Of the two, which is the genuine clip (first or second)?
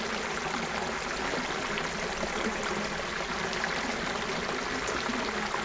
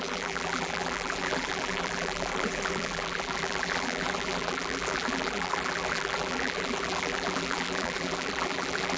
first